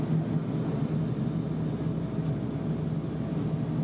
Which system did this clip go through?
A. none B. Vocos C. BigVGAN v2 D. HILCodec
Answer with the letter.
A